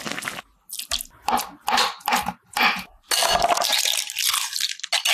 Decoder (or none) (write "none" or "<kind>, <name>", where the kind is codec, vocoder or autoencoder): none